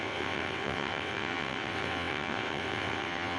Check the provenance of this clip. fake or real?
fake